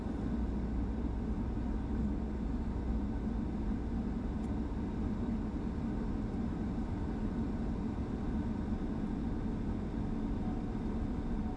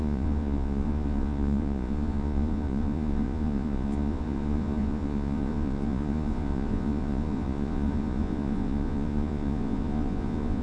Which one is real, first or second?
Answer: first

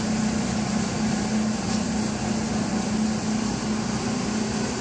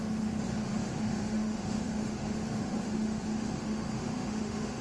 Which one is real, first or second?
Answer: first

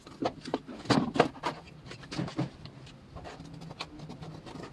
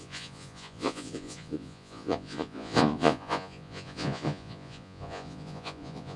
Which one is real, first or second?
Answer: first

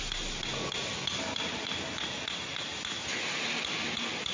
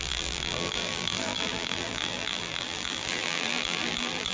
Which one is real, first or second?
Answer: first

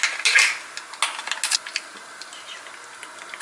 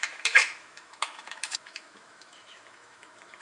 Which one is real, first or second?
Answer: first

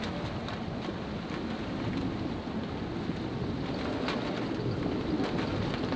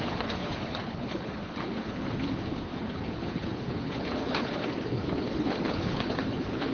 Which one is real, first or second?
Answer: first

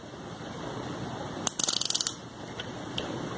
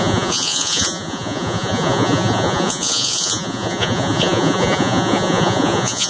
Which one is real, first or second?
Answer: first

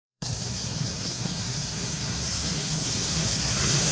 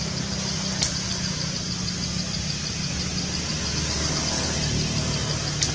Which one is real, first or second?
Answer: second